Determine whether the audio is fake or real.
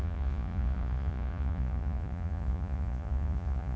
fake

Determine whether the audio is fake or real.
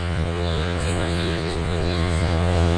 fake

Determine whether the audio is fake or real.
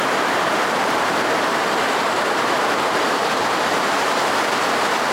fake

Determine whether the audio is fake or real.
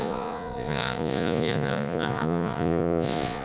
fake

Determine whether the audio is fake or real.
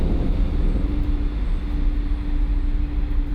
real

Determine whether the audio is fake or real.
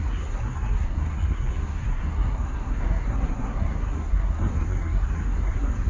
fake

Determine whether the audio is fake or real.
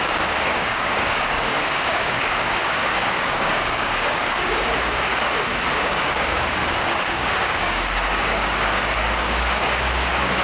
fake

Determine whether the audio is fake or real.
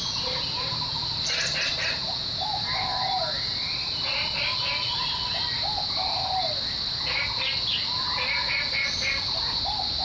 real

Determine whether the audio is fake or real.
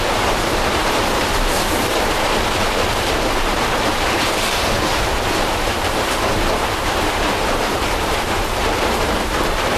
fake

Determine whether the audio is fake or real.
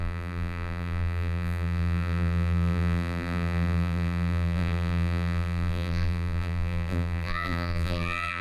fake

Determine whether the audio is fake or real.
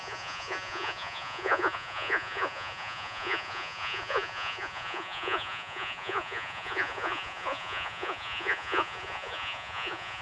fake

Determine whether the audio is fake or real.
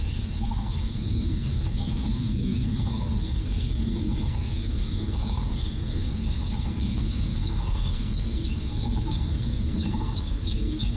fake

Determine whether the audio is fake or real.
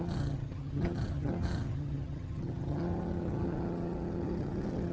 fake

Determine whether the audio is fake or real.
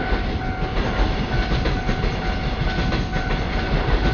real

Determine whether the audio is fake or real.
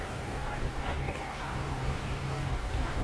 fake